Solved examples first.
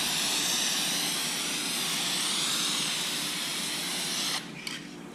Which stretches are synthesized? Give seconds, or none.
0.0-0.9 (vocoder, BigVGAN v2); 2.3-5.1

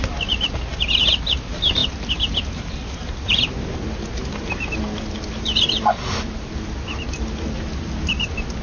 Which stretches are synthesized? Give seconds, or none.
none

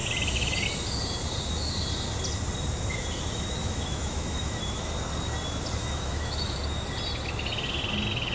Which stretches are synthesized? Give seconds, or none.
3.6-4.9 (autoencoder, DAC-VAE); 5.8-6.6

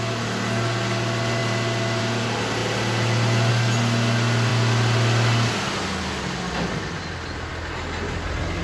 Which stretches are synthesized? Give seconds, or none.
none

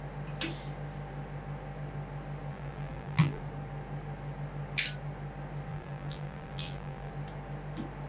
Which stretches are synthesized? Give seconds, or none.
2.5-3.4 (vocoder, BigVGAN v2); 5.7-7.1